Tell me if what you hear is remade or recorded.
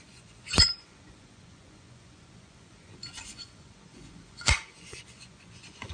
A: remade